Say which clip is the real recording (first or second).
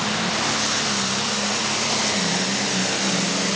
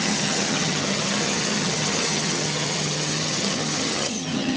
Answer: first